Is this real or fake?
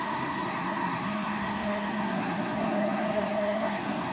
fake